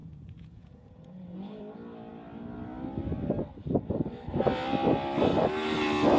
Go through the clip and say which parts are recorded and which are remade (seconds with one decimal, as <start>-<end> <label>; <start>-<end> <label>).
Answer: 0.0-1.6 remade; 1.6-6.2 recorded